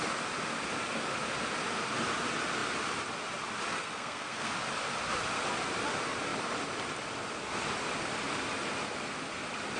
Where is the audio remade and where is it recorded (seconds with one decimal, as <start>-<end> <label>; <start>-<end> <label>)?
0.0-3.7 recorded; 3.7-4.5 remade; 4.5-9.8 recorded